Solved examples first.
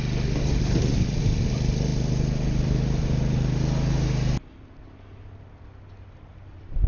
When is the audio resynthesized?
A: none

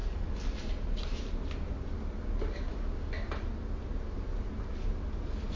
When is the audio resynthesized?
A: none

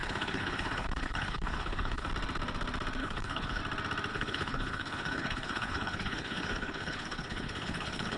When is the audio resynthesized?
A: 0.0-2.1 (codec, HILCodec); 3.0-3.6; 4.1-8.2

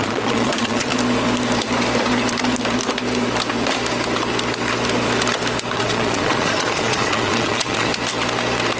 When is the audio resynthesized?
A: 0.0-0.9 (vocoder, Vocos); 5.8-7.9